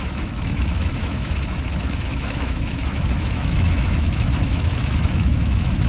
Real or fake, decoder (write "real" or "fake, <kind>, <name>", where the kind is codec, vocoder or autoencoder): fake, autoencoder, DAC-VAE